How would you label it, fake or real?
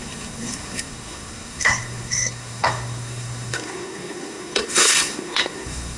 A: fake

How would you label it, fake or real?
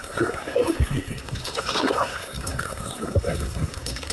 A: fake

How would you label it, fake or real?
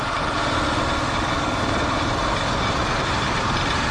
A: real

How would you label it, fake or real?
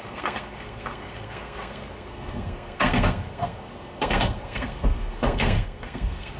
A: fake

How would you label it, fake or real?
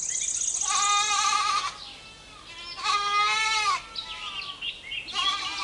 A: real